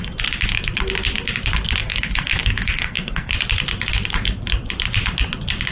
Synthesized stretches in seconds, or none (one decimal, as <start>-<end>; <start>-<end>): 1.8-3.3